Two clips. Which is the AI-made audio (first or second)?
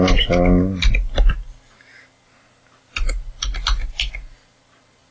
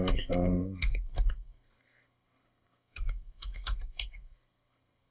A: second